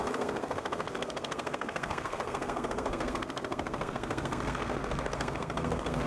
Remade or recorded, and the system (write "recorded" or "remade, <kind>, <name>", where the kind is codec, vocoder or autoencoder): remade, codec, SNAC